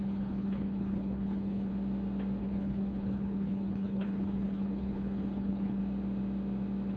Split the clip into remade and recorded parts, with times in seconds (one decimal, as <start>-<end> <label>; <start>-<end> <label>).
0.0-1.7 remade; 1.7-2.4 recorded; 2.4-5.8 remade; 5.8-7.0 recorded